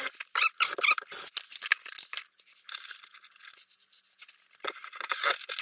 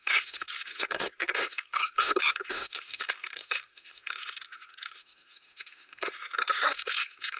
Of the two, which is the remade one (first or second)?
second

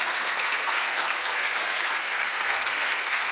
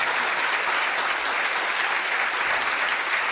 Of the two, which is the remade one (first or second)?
first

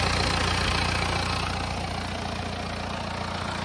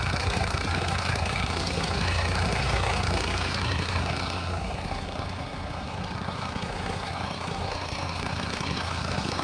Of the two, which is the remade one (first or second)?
second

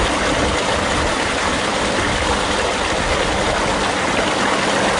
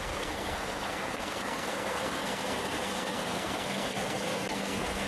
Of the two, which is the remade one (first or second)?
second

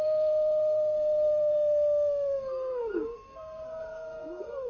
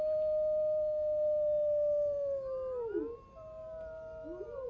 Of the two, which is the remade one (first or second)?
first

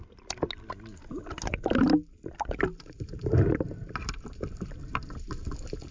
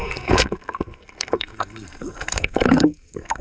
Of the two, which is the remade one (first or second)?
second